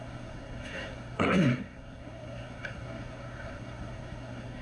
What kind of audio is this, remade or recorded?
remade